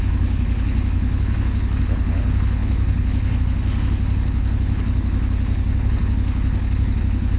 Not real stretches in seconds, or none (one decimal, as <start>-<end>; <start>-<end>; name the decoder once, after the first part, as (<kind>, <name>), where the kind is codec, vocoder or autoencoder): 0.0-7.4 (codec, HILCodec)